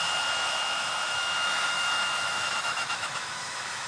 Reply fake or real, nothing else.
fake